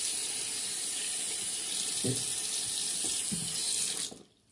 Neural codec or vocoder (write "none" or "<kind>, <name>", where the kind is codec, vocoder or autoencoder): none